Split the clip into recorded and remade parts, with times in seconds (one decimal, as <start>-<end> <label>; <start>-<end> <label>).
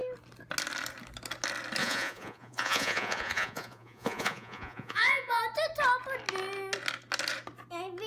0.0-1.8 recorded; 1.8-5.4 remade; 5.4-8.1 recorded